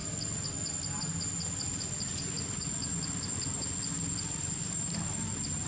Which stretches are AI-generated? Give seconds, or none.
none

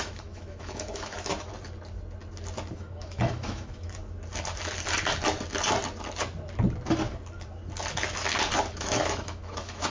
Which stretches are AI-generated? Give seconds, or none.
0.0-1.5; 2.7-4.0; 8.7-9.9

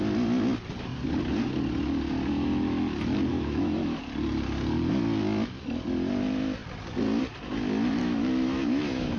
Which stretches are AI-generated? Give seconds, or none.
3.3-4.0; 8.0-9.2

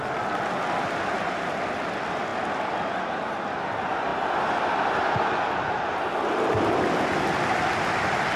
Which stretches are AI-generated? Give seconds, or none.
none